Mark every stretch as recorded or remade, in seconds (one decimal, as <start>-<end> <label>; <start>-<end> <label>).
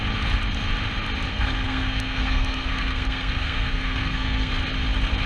0.0-1.3 recorded; 1.3-4.5 remade; 4.5-5.3 recorded